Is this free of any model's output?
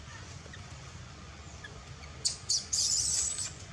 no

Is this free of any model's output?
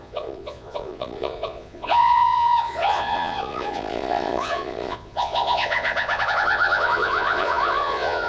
no